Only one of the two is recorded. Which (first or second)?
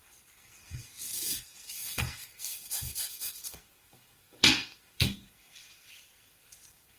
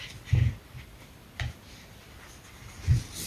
second